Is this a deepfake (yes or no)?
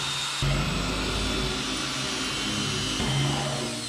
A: no